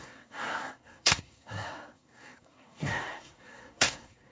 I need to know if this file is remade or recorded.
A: remade